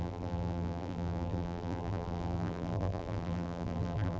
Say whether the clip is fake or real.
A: fake